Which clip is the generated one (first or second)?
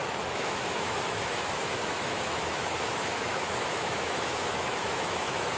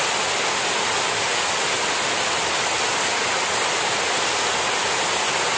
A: first